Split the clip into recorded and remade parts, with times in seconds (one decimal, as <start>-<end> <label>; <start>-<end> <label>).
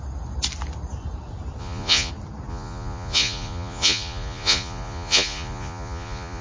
0.0-1.6 recorded; 1.6-2.1 remade; 2.1-2.5 recorded; 2.5-6.4 remade